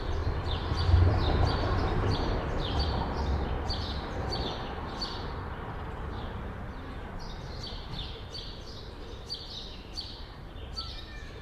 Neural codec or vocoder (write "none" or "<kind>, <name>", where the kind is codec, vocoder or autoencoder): vocoder, BigVGAN v2